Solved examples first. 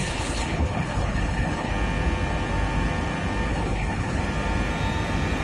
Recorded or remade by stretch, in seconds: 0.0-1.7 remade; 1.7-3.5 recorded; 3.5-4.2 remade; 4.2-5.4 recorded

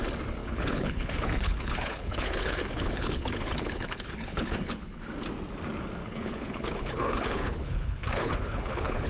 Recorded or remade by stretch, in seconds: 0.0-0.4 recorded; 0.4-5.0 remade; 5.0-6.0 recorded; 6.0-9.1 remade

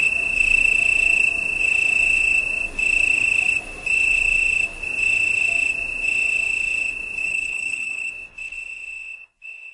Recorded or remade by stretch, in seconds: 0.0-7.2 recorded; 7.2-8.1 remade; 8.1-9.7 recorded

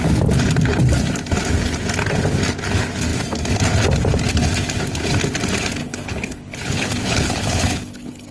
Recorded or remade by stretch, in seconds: 0.0-5.8 recorded; 5.8-8.3 remade

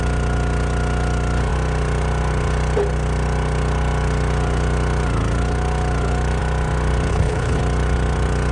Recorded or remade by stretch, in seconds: 0.0-7.1 recorded; 7.1-7.6 remade; 7.6-8.5 recorded